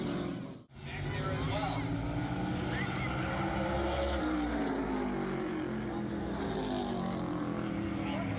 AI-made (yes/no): no